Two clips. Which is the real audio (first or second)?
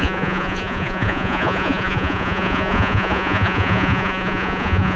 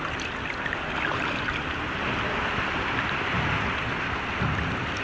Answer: second